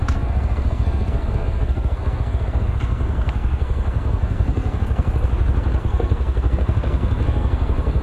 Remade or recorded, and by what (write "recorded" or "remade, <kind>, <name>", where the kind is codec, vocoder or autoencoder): remade, codec, SNAC